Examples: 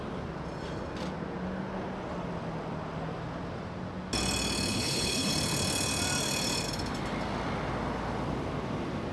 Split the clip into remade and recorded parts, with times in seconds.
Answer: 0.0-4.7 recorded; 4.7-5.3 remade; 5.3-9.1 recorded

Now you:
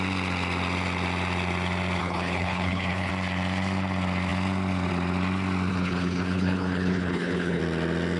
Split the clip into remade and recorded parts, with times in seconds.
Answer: 0.0-2.0 recorded; 2.0-3.1 remade; 3.1-5.7 recorded; 5.7-7.6 remade; 7.6-8.2 recorded

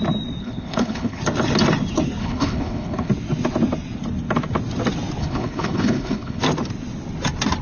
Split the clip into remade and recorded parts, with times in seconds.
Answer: 0.0-0.4 recorded; 0.4-1.2 remade; 1.2-2.2 recorded; 2.2-3.1 remade; 3.1-5.2 recorded; 5.2-6.4 remade; 6.4-7.6 recorded

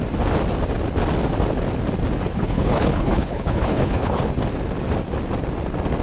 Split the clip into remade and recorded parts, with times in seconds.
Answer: 0.0-2.3 recorded; 2.3-4.2 remade; 4.2-6.0 recorded

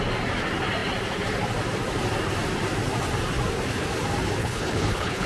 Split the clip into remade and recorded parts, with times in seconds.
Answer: 0.0-4.4 recorded; 4.4-5.3 remade